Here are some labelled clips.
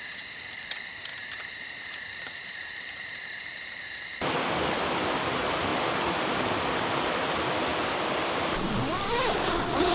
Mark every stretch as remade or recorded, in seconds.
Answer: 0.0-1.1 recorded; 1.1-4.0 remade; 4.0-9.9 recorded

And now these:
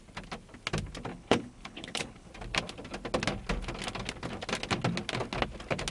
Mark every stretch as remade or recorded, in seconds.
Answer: 0.0-1.1 recorded; 1.1-2.3 remade; 2.3-5.9 recorded

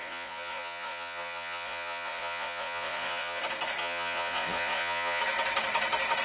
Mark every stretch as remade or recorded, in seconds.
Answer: 0.0-3.4 remade; 3.4-3.8 recorded; 3.8-5.2 remade; 5.2-6.2 recorded

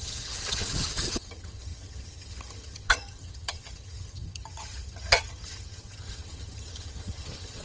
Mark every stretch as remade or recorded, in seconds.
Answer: 0.0-7.6 remade

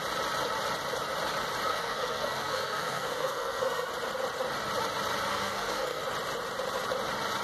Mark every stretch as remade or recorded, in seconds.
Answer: 0.0-1.7 recorded; 1.7-3.9 remade; 3.9-5.3 recorded; 5.3-6.0 remade; 6.0-7.4 recorded

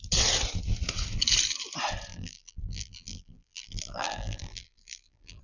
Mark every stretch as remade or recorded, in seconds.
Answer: 0.0-2.1 recorded; 2.1-5.4 remade

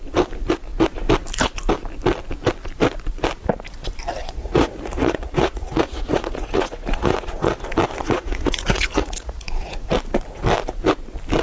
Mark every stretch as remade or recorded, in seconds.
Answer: 0.0-4.2 recorded; 4.2-7.5 remade; 7.5-8.0 recorded; 8.0-9.9 remade; 9.9-11.4 recorded

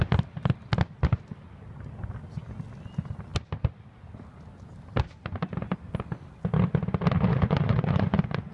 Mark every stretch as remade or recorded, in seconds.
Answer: 0.0-7.3 recorded; 7.3-8.5 remade